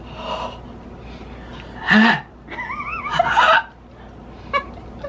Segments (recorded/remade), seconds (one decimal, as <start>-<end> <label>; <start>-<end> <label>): 0.0-5.1 recorded